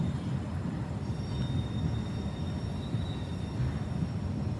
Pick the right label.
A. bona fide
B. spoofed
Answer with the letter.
A